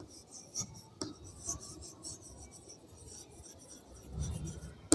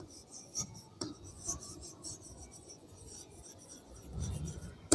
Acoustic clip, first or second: first